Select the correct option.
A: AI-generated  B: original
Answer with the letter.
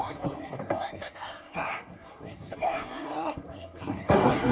A